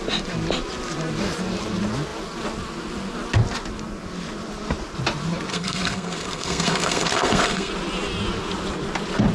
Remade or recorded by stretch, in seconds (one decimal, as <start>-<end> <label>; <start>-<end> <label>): 0.0-5.5 recorded; 5.5-7.7 remade; 7.7-9.3 recorded